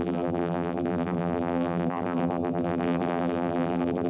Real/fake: fake